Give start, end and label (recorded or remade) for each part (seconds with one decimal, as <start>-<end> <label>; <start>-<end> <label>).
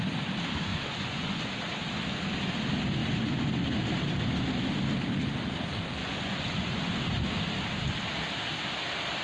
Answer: 0.0-0.7 recorded; 0.7-1.5 remade; 1.5-6.0 recorded; 6.0-7.0 remade; 7.0-9.2 recorded